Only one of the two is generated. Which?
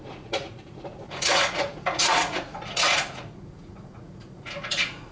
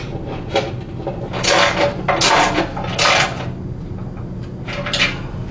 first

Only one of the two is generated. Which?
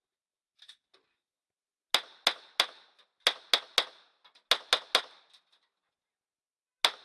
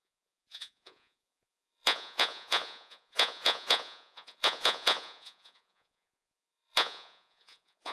second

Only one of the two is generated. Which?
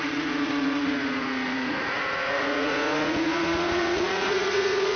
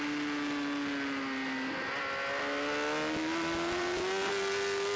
first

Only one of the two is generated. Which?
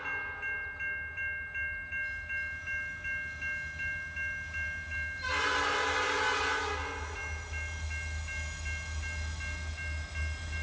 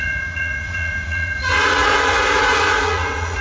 second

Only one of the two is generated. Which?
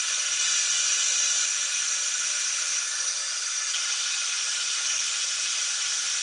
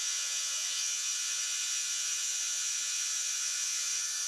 second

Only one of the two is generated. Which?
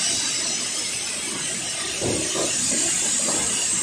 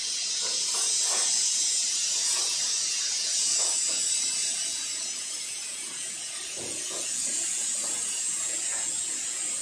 second